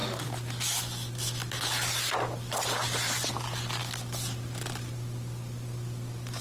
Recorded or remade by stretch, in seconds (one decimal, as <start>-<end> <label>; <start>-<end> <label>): 0.0-6.4 recorded